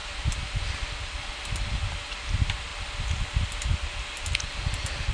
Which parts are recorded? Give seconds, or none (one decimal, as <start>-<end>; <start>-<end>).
0.8-5.1